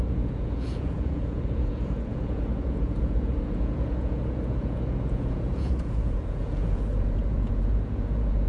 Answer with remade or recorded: remade